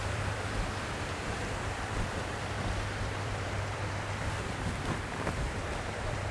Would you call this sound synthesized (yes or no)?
yes